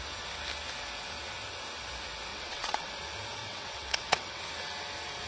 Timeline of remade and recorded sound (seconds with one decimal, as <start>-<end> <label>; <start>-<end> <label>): 0.0-2.3 recorded; 2.3-2.9 remade; 2.9-3.4 recorded; 3.4-4.4 remade; 4.4-5.3 recorded